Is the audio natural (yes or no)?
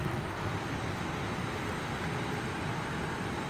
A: yes